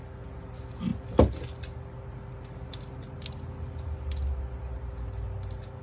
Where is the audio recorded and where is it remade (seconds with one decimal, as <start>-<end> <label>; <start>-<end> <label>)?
0.0-5.8 recorded